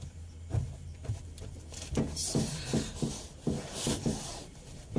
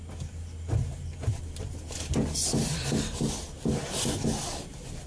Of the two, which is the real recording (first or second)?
second